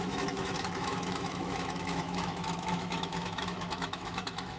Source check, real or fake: fake